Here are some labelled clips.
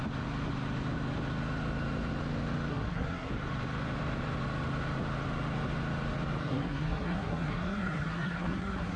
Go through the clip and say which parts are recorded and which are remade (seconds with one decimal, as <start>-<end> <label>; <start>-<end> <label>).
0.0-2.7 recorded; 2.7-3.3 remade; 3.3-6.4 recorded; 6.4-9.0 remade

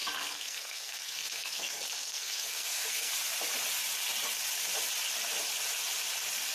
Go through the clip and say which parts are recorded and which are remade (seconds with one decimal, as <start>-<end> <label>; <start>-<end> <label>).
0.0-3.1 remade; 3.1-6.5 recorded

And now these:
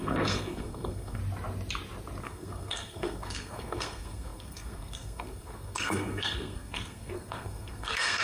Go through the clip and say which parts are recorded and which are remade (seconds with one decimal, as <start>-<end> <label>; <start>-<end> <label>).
0.0-1.2 remade; 1.2-2.2 recorded; 2.2-8.2 remade

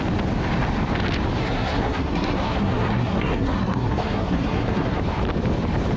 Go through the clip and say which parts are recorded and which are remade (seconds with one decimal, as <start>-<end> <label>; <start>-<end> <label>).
0.0-1.4 recorded; 1.4-5.0 remade; 5.0-6.0 recorded

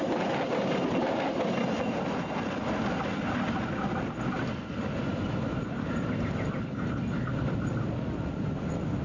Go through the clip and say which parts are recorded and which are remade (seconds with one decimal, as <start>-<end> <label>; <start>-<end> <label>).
0.0-9.0 recorded